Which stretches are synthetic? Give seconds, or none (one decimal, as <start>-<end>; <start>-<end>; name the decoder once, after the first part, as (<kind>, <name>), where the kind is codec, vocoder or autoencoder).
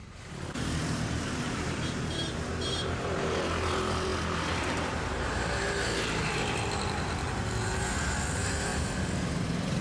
0.0-4.1 (vocoder, BigVGAN v2); 4.6-9.8